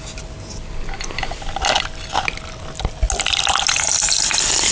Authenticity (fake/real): real